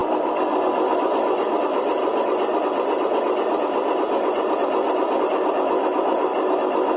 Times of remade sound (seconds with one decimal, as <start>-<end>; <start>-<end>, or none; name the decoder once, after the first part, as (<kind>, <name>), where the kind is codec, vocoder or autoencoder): 0.9-2.0 (autoencoder, DAC-VAE); 5.2-6.3